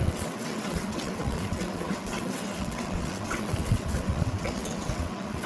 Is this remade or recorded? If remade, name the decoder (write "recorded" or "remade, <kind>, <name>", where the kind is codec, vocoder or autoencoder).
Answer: remade, vocoder, WaveNeXt